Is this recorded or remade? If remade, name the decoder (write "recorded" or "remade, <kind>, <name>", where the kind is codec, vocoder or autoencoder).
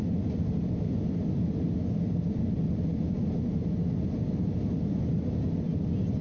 recorded